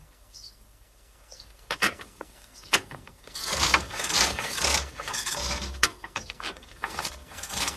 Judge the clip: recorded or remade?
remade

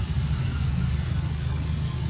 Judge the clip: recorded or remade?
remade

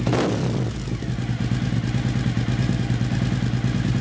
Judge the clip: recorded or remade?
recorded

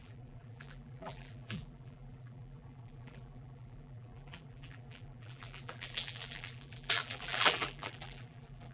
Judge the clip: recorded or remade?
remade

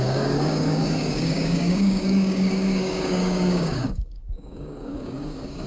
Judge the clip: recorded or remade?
remade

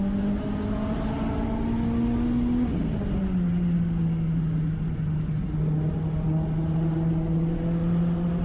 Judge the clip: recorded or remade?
recorded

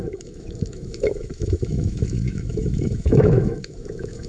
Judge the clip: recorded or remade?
remade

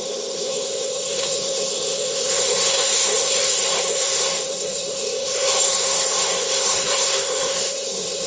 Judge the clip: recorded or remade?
remade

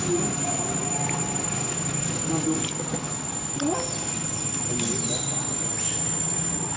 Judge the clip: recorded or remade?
recorded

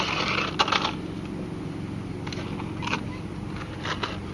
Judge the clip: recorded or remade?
recorded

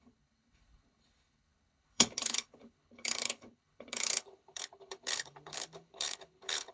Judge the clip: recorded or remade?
remade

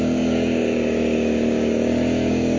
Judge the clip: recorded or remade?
remade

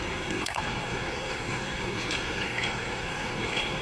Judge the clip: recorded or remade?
remade